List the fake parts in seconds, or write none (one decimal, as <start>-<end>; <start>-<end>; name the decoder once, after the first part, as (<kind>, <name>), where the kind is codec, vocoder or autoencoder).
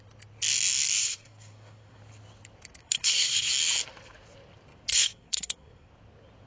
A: 1.0-2.0 (codec, SNAC); 2.8-3.5; 4.9-5.9